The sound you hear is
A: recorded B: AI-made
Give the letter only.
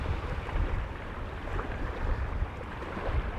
B